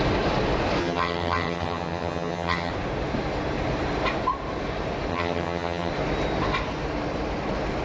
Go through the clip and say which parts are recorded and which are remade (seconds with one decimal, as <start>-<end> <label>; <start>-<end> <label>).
0.0-0.8 recorded; 0.8-2.7 remade; 2.7-5.1 recorded; 5.1-5.9 remade; 5.9-7.8 recorded

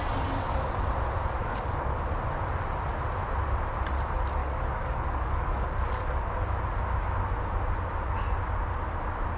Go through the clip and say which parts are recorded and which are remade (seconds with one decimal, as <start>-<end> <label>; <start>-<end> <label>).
0.0-1.4 recorded; 1.4-2.0 remade; 2.0-4.4 recorded; 4.4-6.3 remade; 6.3-9.4 recorded

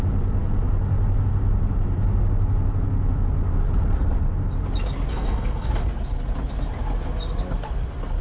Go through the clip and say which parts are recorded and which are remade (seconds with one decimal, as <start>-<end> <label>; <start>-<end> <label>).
0.0-5.1 recorded; 5.1-5.7 remade; 5.7-8.2 recorded

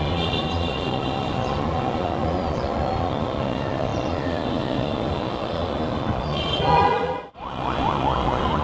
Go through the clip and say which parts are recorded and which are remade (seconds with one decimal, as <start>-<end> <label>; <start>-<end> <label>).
0.0-8.6 remade

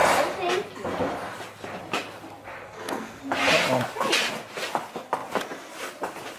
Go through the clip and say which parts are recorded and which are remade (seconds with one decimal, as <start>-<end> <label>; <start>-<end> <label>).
0.0-2.6 recorded; 2.6-3.2 remade; 3.2-6.4 recorded